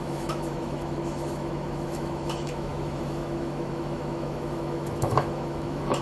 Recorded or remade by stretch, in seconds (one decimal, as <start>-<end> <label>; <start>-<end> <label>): 0.0-6.0 remade